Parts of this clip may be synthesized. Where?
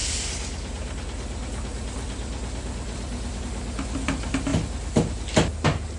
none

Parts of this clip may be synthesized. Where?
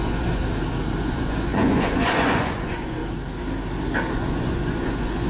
0.0-0.4 (vocoder, Vocos); 1.0-3.0; 4.1-5.3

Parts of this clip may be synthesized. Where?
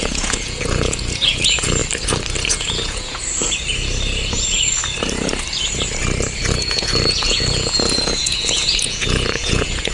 0.0-1.8 (vocoder, Vocos); 2.5-3.2; 6.5-9.9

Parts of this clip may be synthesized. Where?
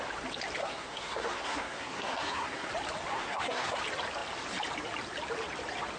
0.6-2.7 (codec, SNAC); 3.1-3.8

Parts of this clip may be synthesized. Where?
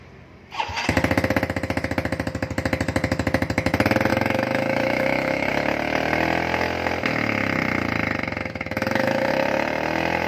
4.1-5.5 (autoencoder, DAC-VAE); 8.4-9.3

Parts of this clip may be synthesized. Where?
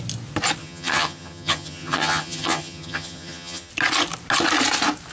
0.6-3.7 (vocoder, HiFi-GAN)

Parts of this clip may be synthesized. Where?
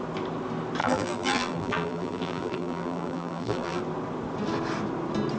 0.8-3.8 (vocoder, BigVGAN v2)